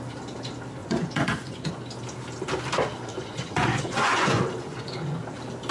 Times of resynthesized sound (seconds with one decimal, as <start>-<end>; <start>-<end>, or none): 0.8-1.7; 3.1-5.2